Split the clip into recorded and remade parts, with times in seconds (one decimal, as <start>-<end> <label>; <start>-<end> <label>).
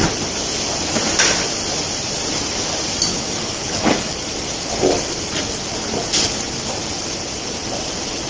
0.0-3.1 recorded; 3.1-4.1 remade; 4.1-8.3 recorded